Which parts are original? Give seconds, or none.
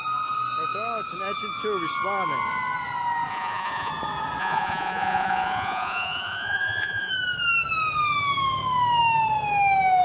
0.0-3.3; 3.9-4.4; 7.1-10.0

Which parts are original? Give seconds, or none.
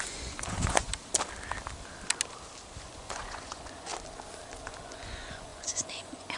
0.9-2.8; 3.9-4.6